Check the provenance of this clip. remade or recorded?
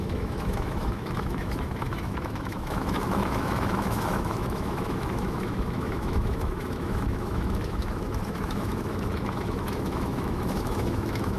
remade